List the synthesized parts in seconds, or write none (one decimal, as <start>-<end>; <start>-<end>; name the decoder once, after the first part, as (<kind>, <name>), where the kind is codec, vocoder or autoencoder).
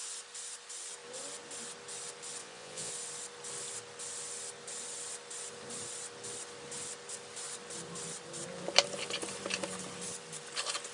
2.4-2.9 (vocoder, Vocos)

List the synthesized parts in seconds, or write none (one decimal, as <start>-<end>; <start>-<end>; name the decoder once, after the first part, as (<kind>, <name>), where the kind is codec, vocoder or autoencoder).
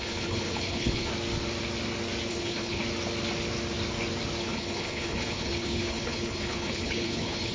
0.0-1.1 (codec, HILCodec); 2.3-2.8; 4.4-7.5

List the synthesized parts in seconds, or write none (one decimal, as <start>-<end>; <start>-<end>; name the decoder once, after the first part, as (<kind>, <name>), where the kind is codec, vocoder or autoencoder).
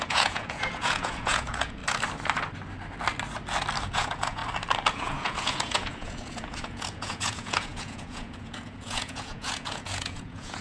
0.0-1.8 (vocoder, Vocos); 3.9-4.4; 4.9-10.6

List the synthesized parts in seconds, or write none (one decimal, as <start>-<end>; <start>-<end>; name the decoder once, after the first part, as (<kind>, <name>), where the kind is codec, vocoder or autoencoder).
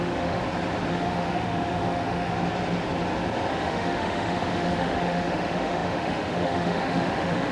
0.0-0.4 (autoencoder, DAC-VAE); 0.9-2.3; 3.5-7.5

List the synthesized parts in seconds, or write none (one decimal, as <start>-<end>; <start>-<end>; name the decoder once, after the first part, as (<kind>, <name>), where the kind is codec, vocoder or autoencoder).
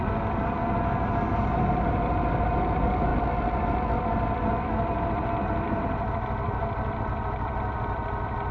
none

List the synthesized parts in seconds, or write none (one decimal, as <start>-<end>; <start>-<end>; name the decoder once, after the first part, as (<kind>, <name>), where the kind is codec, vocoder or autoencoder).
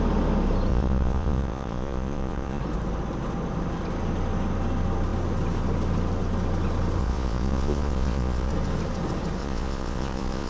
0.7-2.6 (vocoder, Vocos); 7.0-8.5; 9.4-10.5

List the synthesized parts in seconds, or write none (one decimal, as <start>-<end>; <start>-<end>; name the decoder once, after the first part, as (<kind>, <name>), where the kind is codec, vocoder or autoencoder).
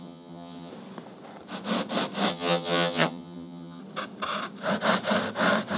0.0-0.7 (vocoder, HiFi-GAN); 2.3-3.8